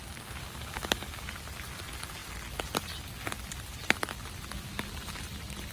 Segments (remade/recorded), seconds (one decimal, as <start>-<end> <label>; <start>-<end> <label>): 0.0-1.3 remade; 1.3-5.7 recorded